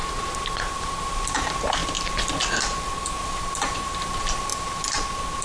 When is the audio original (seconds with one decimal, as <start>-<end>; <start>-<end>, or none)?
0.0-0.8; 1.8-3.1; 4.5-5.4